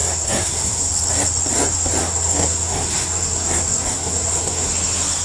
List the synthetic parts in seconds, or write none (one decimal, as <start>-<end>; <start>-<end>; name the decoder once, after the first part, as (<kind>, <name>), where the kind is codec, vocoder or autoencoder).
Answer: 0.0-0.9 (codec, SNAC); 2.0-4.7